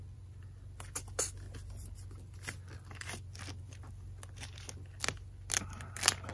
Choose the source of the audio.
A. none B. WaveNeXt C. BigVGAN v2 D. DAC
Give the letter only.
A